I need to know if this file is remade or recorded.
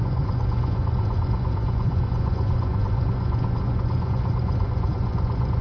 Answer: remade